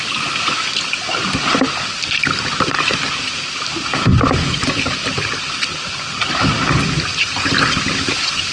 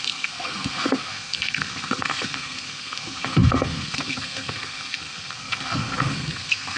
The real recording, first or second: first